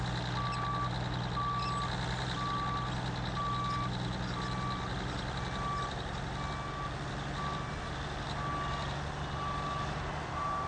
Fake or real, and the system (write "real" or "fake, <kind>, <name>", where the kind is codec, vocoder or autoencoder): real